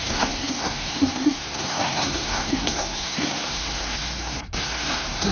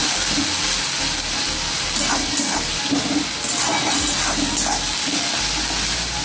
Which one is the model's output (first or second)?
first